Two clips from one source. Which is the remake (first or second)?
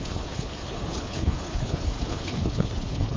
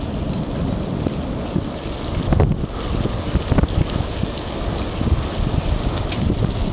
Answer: first